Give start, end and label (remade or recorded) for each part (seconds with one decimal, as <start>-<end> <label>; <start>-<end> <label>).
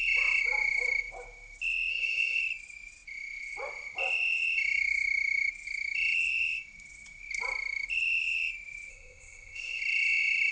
0.0-1.9 recorded; 1.9-2.4 remade; 2.4-8.9 recorded; 8.9-9.8 remade; 9.8-10.5 recorded